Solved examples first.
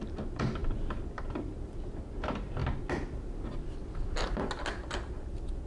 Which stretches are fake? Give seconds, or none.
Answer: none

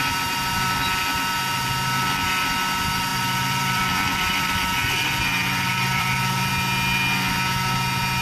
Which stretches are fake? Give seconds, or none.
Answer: 3.1-6.5

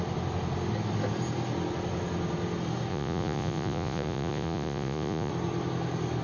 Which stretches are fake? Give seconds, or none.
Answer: 2.9-5.3

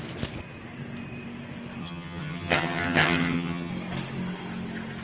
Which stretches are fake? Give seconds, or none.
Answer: 1.8-3.7

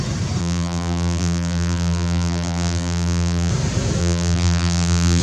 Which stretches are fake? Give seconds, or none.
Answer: 0.4-3.5; 4.0-5.2

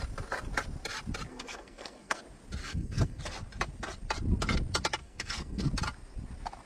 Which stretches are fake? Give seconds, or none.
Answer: 1.3-2.2; 2.6-3.2; 5.0-5.7